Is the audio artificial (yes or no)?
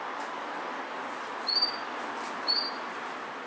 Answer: no